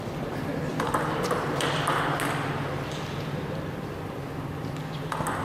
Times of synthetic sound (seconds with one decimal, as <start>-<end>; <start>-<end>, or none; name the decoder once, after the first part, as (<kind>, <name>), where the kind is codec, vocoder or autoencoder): none